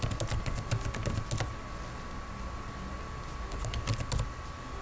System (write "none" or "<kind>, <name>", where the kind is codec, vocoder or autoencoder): none